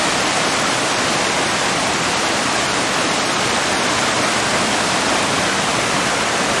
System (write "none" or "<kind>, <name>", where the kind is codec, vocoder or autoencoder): none